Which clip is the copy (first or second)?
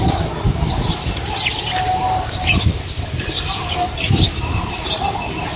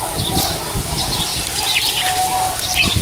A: first